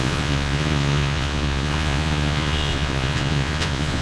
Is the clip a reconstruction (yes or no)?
yes